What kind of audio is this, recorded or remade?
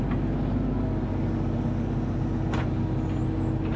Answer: recorded